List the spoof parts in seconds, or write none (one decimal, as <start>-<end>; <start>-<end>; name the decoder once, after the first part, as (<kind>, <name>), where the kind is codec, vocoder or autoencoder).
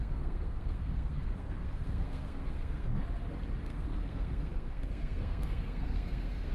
0.0-3.0 (codec, SNAC); 3.6-6.5